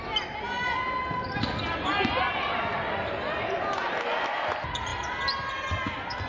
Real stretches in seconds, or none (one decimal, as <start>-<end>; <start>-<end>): 0.0-6.3